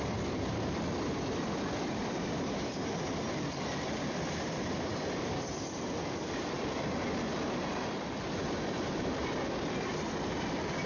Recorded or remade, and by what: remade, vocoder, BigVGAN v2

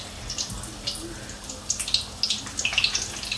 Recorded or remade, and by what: recorded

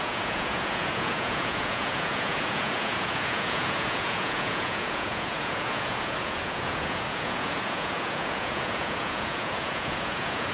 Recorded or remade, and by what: remade, vocoder, Vocos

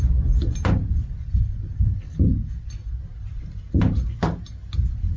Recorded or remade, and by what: recorded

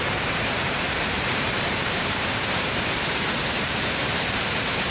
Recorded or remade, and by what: remade, vocoder, BigVGAN v2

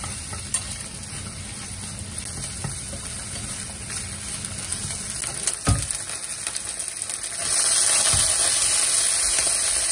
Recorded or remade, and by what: recorded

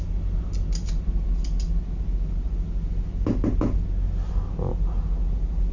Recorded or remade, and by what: recorded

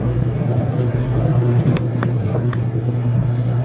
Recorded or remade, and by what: remade, codec, SNAC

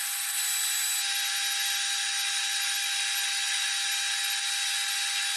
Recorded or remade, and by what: recorded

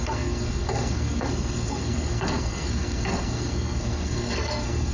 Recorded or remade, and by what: remade, codec, SNAC